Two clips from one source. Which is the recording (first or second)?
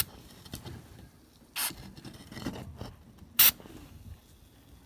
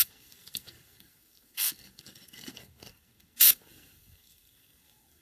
first